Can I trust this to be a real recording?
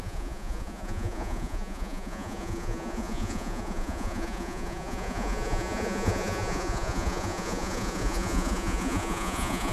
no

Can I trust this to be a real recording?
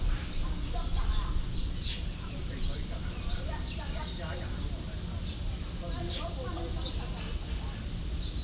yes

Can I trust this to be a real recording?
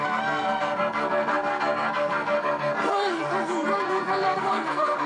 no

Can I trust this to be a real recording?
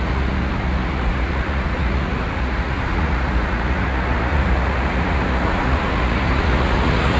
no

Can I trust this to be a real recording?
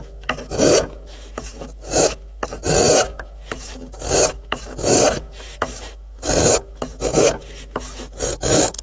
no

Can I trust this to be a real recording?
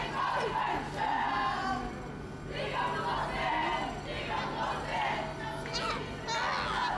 yes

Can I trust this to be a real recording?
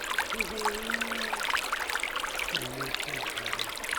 yes